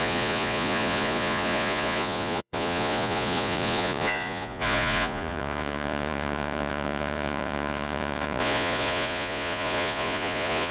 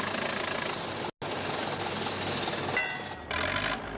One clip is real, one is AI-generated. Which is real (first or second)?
second